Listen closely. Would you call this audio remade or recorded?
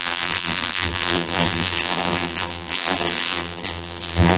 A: remade